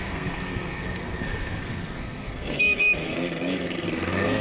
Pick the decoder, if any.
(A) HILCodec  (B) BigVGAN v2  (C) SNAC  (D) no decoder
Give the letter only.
C